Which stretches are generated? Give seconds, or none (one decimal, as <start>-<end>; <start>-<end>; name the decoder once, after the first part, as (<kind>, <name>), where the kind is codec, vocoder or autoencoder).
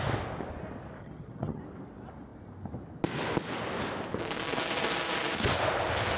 1.0-1.6 (vocoder, HiFi-GAN)